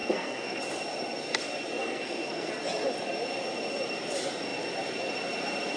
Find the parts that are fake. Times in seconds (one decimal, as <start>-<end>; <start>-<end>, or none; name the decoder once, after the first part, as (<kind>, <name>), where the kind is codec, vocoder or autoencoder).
0.0-0.6 (codec, SNAC); 1.8-2.5